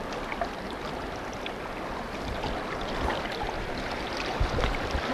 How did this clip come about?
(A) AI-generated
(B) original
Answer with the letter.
B